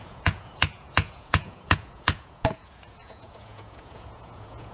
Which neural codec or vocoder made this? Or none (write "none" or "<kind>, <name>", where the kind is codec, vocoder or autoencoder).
vocoder, Vocos